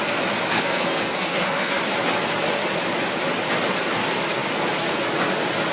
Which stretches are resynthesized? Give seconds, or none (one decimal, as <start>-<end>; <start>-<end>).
0.5-1.8